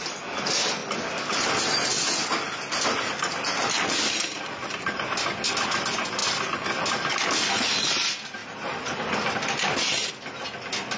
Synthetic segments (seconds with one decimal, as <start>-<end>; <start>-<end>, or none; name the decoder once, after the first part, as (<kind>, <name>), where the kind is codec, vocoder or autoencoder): none

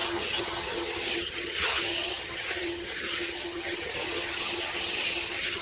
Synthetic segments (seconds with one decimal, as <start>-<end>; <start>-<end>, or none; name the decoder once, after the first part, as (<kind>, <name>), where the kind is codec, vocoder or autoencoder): 0.0-5.6 (vocoder, HiFi-GAN)